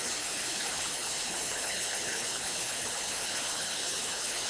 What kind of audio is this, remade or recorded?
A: remade